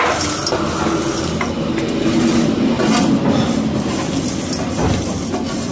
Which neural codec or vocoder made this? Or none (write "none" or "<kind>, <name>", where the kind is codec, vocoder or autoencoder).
none